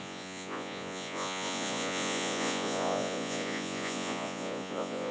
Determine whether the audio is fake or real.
fake